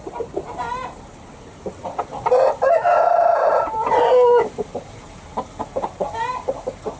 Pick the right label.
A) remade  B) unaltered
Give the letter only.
B